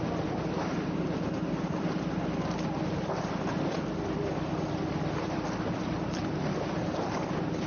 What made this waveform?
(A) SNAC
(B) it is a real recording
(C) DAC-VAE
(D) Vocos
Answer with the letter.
B